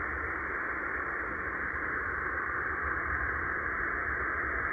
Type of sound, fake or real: fake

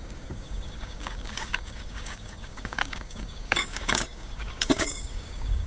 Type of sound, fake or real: fake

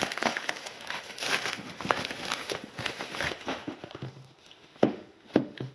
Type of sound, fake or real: fake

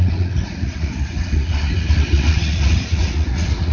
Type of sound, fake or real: fake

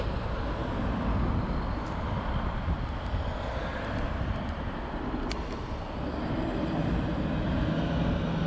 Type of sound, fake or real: real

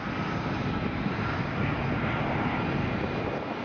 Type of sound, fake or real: real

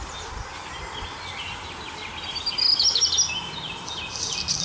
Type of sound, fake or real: real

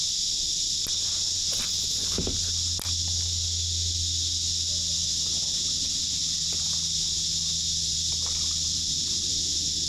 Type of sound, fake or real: real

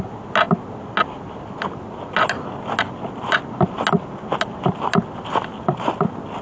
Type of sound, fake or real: real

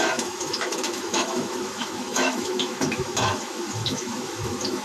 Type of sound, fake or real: fake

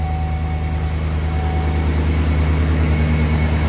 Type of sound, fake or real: real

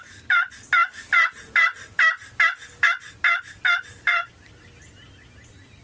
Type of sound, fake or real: real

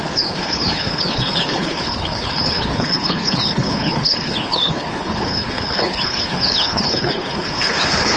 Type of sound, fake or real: fake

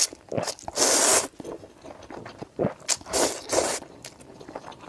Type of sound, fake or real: real